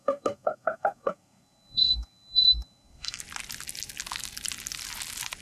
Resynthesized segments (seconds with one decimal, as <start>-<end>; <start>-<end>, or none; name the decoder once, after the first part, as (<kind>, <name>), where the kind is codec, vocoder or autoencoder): 0.0-3.2 (codec, SNAC)